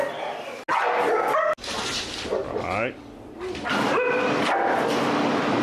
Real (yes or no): yes